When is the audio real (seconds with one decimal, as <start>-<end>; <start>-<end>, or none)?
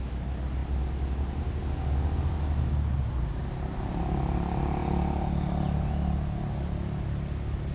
0.0-7.7